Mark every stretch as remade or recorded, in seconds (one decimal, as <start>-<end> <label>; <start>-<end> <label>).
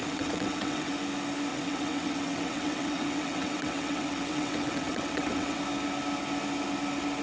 0.0-0.9 remade; 0.9-1.5 recorded; 1.5-5.6 remade; 5.6-7.2 recorded